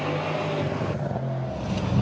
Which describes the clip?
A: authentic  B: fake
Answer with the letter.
A